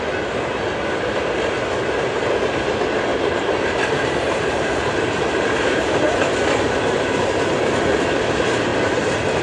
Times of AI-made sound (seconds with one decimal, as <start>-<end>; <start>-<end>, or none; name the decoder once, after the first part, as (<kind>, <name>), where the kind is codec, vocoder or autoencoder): 3.1-6.3 (vocoder, BigVGAN v2)